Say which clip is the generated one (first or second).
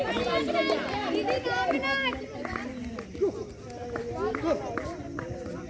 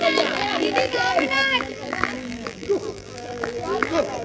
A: second